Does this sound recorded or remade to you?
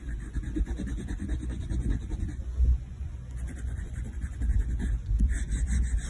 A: remade